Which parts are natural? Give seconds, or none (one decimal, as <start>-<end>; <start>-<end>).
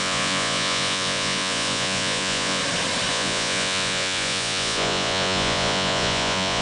2.6-3.1